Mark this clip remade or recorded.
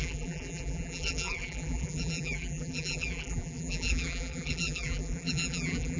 remade